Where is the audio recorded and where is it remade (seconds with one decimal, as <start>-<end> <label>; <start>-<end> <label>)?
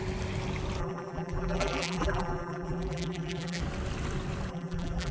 0.0-0.8 recorded; 0.8-3.6 remade; 3.6-4.5 recorded; 4.5-5.1 remade